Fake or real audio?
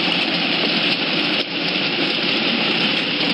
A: fake